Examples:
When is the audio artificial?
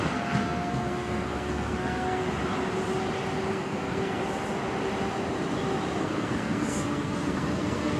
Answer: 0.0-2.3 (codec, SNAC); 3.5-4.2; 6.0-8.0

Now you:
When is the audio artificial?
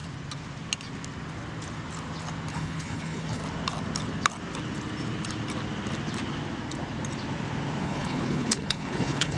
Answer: 2.5-3.4 (codec, HILCodec); 7.8-9.4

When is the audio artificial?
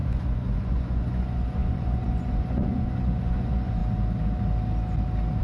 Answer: 0.0-3.8 (vocoder, Vocos)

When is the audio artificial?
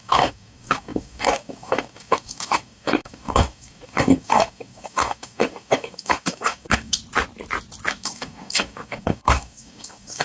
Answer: 0.0-7.0 (codec, DAC); 7.9-10.2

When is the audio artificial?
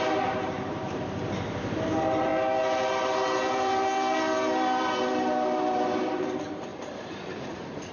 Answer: 0.0-2.3 (vocoder, BigVGAN v2); 2.9-6.7; 7.4-7.9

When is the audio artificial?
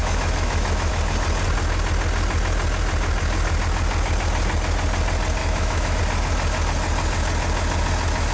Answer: 0.0-0.9 (autoencoder, DAC-VAE); 5.4-6.0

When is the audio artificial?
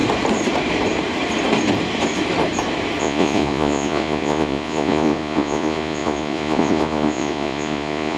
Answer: 3.0-8.2 (vocoder, Vocos)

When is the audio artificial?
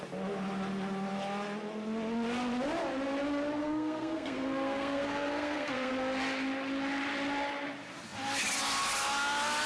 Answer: 3.6-5.9 (codec, SNAC)